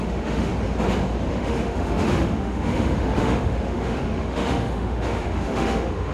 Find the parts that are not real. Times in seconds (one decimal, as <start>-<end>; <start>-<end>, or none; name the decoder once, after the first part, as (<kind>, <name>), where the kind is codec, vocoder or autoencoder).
0.0-0.5 (autoencoder, DAC-VAE); 1.3-6.1

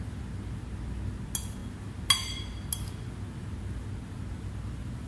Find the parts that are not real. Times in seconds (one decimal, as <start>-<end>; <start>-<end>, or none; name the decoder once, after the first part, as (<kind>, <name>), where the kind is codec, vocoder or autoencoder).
none

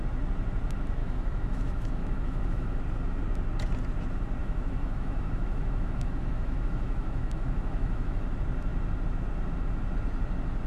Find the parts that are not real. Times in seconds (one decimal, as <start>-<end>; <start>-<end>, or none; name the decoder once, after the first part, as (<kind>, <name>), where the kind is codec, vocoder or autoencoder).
1.0-2.8 (autoencoder, DAC-VAE); 4.4-8.2

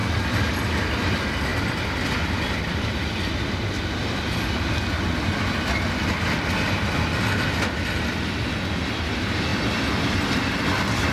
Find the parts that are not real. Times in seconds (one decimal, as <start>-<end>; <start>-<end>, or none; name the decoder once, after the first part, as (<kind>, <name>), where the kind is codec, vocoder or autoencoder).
1.5-3.3 (vocoder, BigVGAN v2); 9.5-11.1

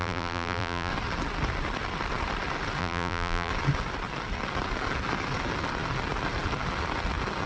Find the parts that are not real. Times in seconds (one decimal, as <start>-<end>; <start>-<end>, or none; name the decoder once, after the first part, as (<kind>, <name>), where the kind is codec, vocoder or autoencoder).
0.0-0.9 (vocoder, BigVGAN v2); 2.8-3.5

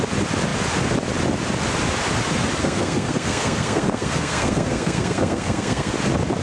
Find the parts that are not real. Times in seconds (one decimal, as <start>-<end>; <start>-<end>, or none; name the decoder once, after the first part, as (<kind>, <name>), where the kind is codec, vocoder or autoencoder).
2.6-5.9 (codec, SNAC)